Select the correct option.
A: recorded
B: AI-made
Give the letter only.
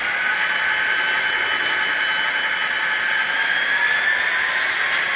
A